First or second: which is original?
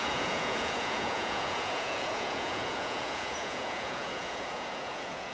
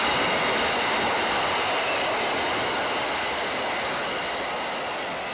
second